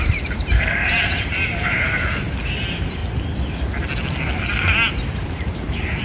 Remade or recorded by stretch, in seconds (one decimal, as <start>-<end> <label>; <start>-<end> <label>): 0.0-3.0 remade; 3.0-4.9 recorded; 4.9-6.0 remade